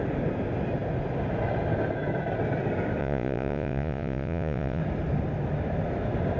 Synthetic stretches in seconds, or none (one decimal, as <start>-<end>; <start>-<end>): 3.0-4.8